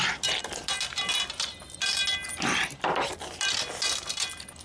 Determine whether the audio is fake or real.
real